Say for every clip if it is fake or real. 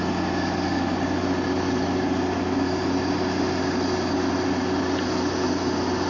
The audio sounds real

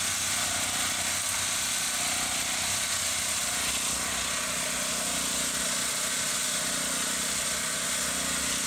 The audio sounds real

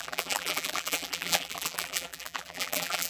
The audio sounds fake